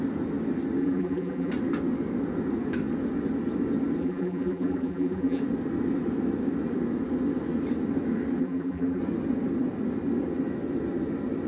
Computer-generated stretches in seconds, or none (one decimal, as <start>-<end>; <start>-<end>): 0.8-1.5; 4.0-5.4; 8.4-9.0